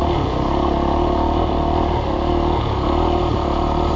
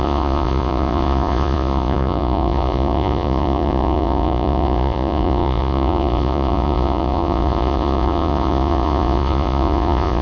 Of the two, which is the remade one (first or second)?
second